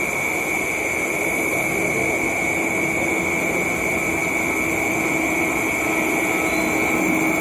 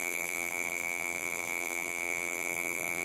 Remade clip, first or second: second